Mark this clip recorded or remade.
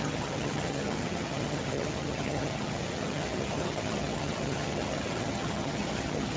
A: remade